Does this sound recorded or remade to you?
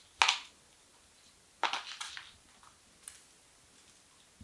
recorded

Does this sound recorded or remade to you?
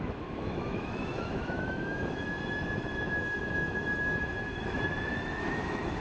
remade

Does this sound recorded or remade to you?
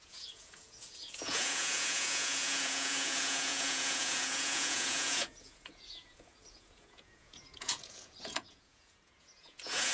remade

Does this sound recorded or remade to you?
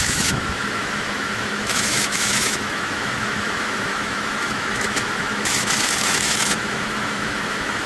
remade